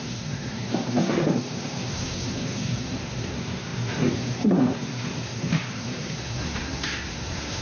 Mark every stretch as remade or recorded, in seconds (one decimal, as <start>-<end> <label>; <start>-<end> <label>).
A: 0.0-7.6 remade